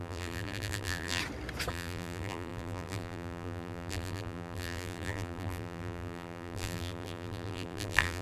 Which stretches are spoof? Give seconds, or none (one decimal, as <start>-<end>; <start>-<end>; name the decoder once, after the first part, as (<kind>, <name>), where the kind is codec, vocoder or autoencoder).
0.0-1.2 (vocoder, BigVGAN v2); 1.7-8.2